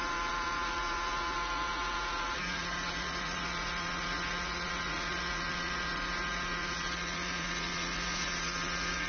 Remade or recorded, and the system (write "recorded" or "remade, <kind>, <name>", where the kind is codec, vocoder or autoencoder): remade, vocoder, Vocos